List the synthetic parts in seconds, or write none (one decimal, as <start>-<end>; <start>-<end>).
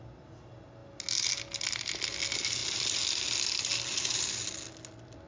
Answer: none